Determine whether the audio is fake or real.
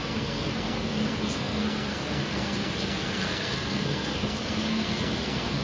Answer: fake